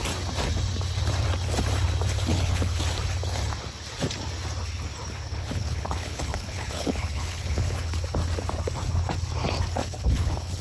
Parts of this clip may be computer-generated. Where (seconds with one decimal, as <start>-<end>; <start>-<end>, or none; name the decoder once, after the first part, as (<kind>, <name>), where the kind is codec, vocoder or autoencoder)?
2.3-2.8 (codec, HILCodec); 5.3-7.9; 9.8-10.6